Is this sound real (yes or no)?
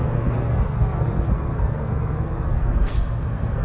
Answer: no